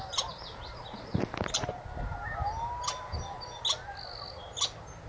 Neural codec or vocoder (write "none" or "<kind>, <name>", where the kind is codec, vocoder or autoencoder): none